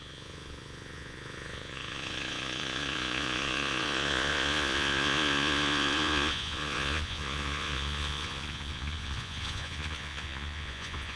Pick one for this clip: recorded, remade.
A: remade